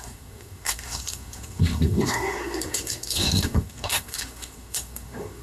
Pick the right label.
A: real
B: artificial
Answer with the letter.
B